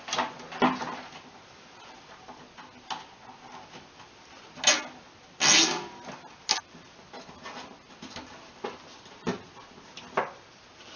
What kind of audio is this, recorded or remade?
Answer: recorded